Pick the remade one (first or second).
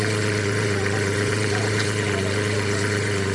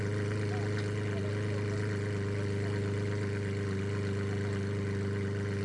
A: first